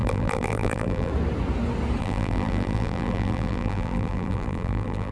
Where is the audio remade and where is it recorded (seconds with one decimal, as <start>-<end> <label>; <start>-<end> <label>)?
0.0-1.1 remade; 1.1-2.0 recorded; 2.0-5.1 remade